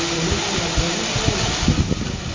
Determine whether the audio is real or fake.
real